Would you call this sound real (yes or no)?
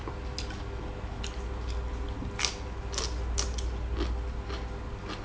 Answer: yes